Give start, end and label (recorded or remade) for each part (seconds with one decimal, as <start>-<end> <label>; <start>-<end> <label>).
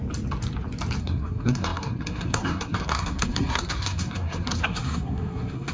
0.0-1.0 recorded; 1.0-5.7 remade